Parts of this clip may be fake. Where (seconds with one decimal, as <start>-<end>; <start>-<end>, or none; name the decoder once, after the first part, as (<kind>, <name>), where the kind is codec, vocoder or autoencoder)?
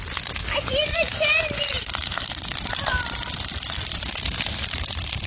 0.9-4.1 (vocoder, BigVGAN v2)